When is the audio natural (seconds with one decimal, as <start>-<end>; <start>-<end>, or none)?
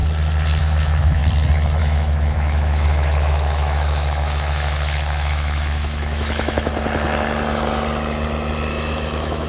0.0-0.6; 1.2-1.8; 6.7-8.7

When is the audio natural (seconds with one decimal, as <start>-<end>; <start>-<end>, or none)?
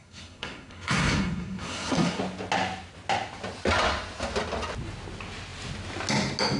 2.2-6.6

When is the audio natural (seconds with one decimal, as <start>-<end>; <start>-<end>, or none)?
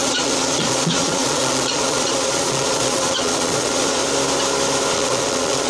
4.0-4.9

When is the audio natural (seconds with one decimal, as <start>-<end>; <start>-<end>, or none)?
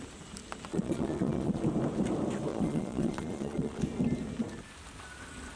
0.0-0.7; 1.6-2.5; 3.8-5.6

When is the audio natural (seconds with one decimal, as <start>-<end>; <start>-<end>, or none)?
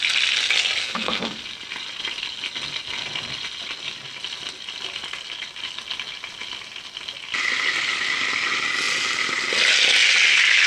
0.0-0.8; 1.4-10.7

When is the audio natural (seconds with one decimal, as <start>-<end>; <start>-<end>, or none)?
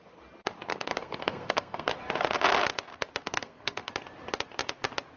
0.0-0.7; 1.9-3.2; 3.9-5.2